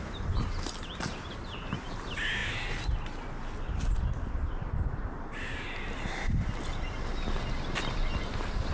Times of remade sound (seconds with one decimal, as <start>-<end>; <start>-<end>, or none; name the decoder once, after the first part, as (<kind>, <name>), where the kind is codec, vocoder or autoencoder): none